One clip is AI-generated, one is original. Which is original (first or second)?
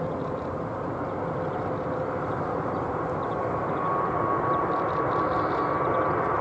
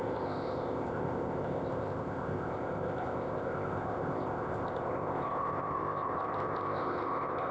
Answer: first